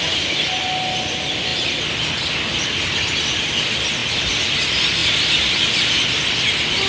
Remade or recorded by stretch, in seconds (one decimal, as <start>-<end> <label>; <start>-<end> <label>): 0.0-6.9 recorded